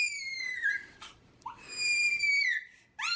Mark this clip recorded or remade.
remade